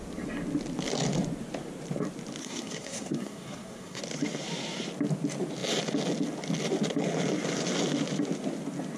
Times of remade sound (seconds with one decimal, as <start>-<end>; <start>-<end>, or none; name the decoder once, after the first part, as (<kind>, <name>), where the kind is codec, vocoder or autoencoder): 2.4-4.0 (codec, SNAC)